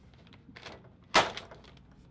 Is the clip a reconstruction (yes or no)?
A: no